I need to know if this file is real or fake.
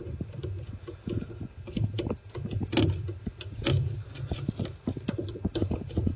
real